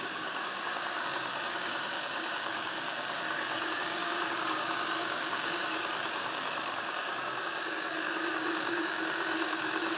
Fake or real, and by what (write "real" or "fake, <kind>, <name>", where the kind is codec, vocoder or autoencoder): fake, codec, DAC